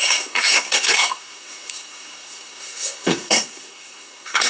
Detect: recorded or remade remade